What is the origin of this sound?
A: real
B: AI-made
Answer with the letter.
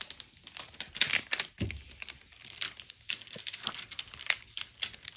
A